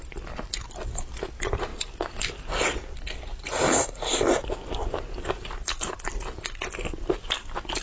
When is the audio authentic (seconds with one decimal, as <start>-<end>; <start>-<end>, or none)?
0.0-7.8